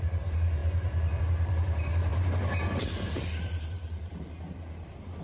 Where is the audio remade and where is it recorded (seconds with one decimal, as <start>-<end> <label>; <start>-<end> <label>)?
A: 0.0-5.2 remade